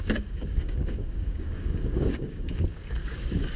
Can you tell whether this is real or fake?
fake